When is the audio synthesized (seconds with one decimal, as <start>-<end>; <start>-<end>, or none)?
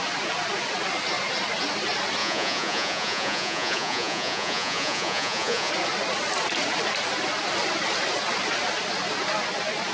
2.2-5.7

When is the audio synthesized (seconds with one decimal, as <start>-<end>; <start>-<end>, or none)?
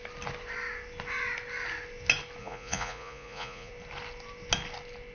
2.4-3.7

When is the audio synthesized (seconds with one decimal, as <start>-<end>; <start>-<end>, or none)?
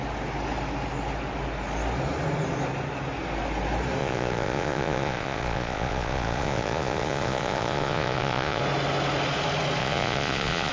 4.0-8.6; 9.8-10.7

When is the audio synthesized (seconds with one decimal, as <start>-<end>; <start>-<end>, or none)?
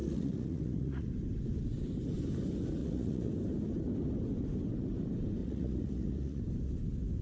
0.0-1.1; 2.8-3.3; 5.4-6.4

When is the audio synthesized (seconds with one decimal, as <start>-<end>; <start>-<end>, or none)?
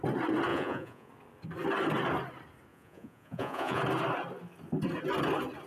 0.5-1.1; 2.7-3.8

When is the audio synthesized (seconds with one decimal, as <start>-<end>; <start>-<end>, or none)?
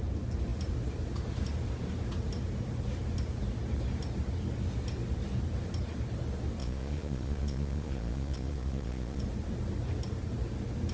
6.6-9.2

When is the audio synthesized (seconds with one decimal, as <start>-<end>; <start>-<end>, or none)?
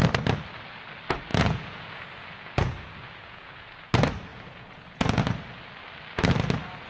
1.3-3.9; 4.3-5.2